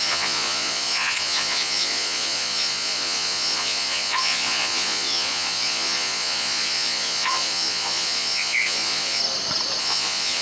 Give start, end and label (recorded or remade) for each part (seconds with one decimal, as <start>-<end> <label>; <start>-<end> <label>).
0.0-9.2 remade; 9.2-9.8 recorded; 9.8-10.4 remade

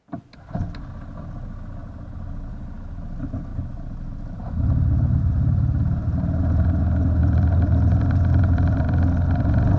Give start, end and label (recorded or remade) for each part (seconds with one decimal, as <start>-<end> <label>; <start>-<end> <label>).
0.0-1.8 recorded; 1.8-2.5 remade; 2.5-3.5 recorded; 3.5-6.8 remade; 6.8-7.2 recorded; 7.2-8.8 remade; 8.8-9.8 recorded

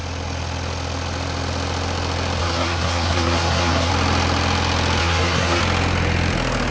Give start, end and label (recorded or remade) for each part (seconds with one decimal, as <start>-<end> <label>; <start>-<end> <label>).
0.0-2.4 recorded; 2.4-3.9 remade; 3.9-5.0 recorded; 5.0-5.6 remade; 5.6-6.7 recorded